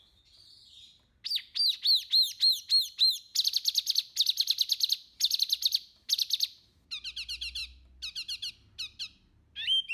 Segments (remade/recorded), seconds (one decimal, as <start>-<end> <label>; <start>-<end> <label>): 0.0-9.9 recorded